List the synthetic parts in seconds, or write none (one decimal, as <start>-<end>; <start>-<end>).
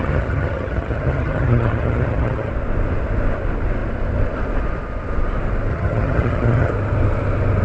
0.0-2.5; 5.7-6.7